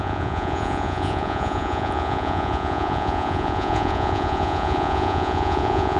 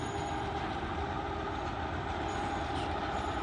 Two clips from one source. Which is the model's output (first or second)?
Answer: first